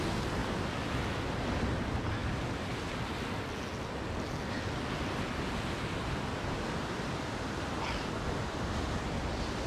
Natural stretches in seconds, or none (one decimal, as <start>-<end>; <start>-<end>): 0.0-9.7